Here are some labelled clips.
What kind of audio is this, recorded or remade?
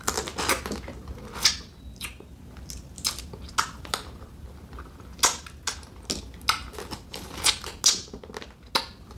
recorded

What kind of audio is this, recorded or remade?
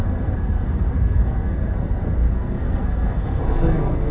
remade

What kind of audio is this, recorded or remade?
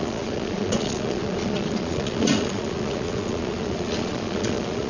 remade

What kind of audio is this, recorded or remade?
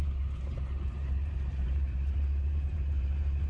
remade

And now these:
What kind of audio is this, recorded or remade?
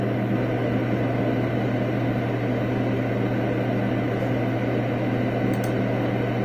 recorded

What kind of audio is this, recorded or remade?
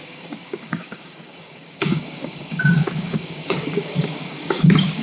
remade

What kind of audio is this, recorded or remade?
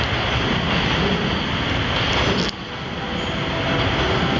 recorded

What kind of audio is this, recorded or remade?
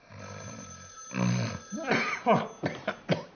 recorded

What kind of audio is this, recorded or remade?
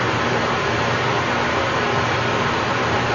remade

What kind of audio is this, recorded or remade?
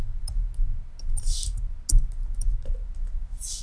recorded